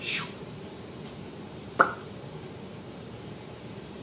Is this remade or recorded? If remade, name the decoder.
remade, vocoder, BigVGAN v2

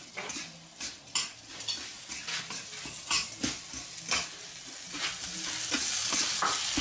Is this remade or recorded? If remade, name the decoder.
recorded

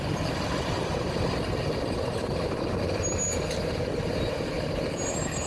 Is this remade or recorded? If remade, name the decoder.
recorded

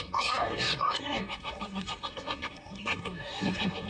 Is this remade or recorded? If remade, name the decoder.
remade, codec, SNAC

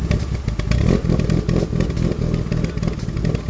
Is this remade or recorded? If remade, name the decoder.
recorded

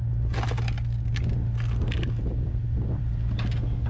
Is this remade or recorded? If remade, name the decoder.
recorded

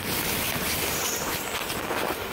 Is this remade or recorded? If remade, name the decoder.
recorded